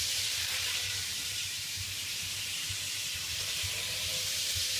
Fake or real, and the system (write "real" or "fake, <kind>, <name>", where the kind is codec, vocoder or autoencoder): fake, vocoder, BigVGAN v2